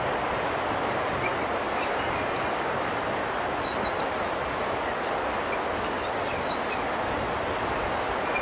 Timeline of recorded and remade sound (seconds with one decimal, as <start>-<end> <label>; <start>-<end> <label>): 0.0-8.4 recorded